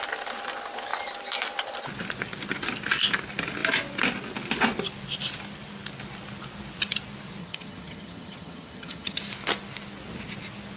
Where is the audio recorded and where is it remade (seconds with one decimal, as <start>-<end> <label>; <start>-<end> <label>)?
0.0-7.4 recorded; 7.4-9.2 remade; 9.2-10.8 recorded

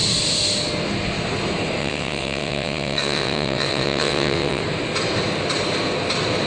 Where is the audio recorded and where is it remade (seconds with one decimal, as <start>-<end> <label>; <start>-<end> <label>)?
0.0-1.8 recorded; 1.8-4.6 remade; 4.6-6.5 recorded

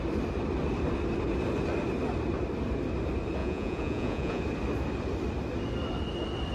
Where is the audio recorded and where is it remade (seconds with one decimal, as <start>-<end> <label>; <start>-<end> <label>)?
0.0-3.4 recorded; 3.4-4.4 remade; 4.4-6.5 recorded

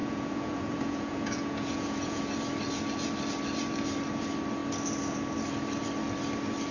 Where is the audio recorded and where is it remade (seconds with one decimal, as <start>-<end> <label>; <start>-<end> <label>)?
0.0-2.2 remade; 2.2-6.7 recorded

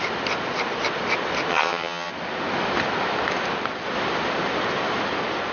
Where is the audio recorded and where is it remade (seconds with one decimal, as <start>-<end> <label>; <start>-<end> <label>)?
0.0-1.5 recorded; 1.5-2.1 remade; 2.1-5.5 recorded